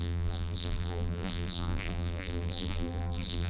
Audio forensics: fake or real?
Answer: fake